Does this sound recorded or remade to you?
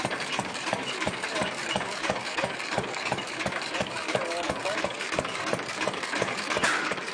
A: remade